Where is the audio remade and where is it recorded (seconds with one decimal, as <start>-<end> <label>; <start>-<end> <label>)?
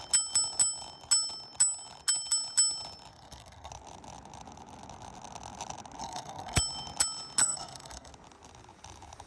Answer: 0.0-3.1 recorded; 3.1-3.7 remade; 3.7-6.0 recorded; 6.0-6.6 remade; 6.6-7.4 recorded; 7.4-8.1 remade; 8.1-9.3 recorded